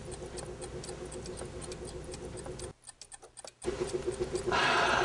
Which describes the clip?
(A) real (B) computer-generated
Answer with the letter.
A